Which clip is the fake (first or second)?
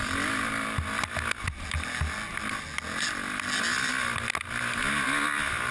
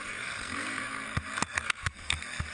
second